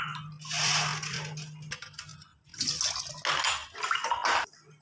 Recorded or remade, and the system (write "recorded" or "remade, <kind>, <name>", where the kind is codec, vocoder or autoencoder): recorded